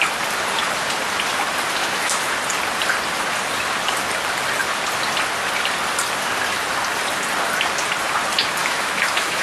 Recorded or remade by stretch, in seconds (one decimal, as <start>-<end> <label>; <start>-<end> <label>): 0.0-1.8 recorded; 1.8-2.3 remade; 2.3-8.6 recorded; 8.6-9.4 remade